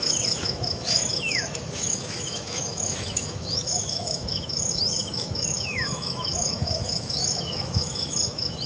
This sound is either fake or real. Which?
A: fake